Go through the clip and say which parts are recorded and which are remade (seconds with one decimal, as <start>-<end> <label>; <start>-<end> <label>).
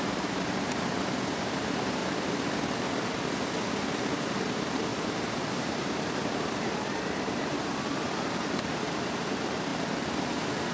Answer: 0.0-2.0 remade; 2.0-4.1 recorded; 4.1-9.7 remade; 9.7-10.7 recorded